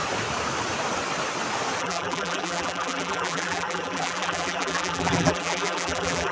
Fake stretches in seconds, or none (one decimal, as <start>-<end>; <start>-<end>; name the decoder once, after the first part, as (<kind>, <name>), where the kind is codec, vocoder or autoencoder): 1.8-6.3 (vocoder, BigVGAN v2)

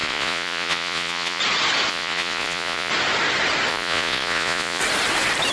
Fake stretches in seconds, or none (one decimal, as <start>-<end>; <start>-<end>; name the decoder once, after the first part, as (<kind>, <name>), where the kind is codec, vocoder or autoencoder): 0.0-1.4 (vocoder, Vocos); 1.9-2.9; 3.7-4.8

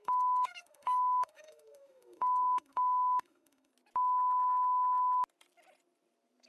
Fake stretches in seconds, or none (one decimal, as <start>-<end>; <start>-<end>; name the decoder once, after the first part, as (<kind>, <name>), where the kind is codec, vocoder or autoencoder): 0.0-3.7 (autoencoder, DAC-VAE)

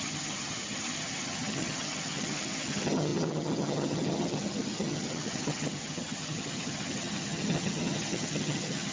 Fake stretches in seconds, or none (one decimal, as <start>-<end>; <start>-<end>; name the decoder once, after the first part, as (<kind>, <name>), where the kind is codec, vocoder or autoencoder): 0.0-8.9 (vocoder, HiFi-GAN)

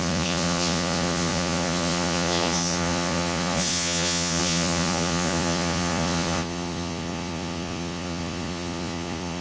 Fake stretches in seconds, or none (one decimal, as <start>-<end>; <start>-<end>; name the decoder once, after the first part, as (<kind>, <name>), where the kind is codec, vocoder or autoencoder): 0.0-9.4 (vocoder, Vocos)